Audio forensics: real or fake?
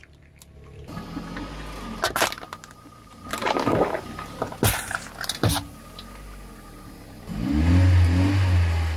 real